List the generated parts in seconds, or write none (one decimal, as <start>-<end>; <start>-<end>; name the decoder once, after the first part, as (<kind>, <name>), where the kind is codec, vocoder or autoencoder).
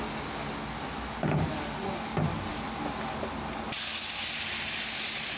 none